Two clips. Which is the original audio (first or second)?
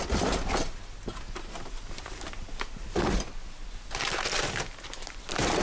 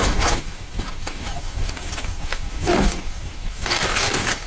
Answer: first